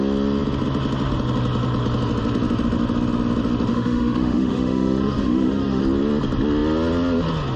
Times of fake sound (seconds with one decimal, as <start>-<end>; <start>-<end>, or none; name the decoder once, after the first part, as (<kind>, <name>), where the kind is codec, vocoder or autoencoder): 3.7-5.8 (autoencoder, DAC-VAE)